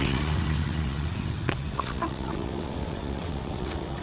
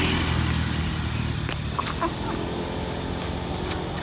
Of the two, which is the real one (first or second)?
second